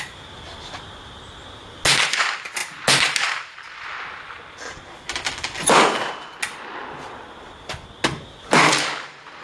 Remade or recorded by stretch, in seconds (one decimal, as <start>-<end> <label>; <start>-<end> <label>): 0.0-9.4 recorded

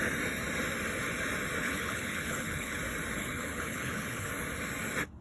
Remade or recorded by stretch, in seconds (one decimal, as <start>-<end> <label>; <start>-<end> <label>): 0.0-1.6 recorded; 1.6-2.8 remade; 2.8-3.2 recorded; 3.2-4.3 remade; 4.3-5.2 recorded

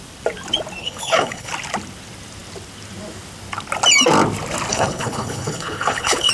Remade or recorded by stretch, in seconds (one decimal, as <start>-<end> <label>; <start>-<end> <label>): 0.0-0.8 recorded; 0.8-1.5 remade; 1.5-4.7 recorded; 4.7-6.3 remade